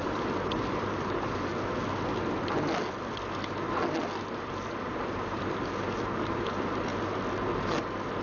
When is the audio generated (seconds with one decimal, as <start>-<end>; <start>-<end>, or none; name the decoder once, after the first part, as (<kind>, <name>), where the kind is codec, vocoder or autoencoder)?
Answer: 0.0-1.5 (vocoder, BigVGAN v2); 4.2-6.9